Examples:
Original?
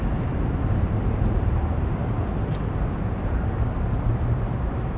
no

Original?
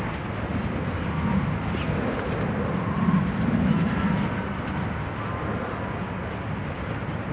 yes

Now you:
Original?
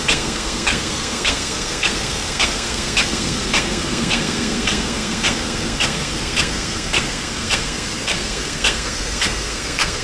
no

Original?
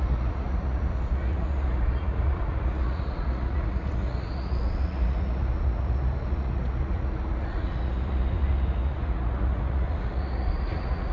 no